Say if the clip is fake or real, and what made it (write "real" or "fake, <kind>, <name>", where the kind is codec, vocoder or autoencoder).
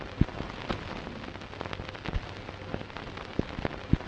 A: real